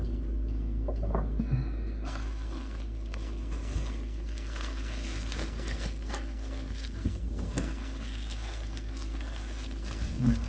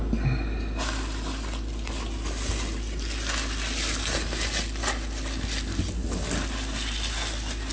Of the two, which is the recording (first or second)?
second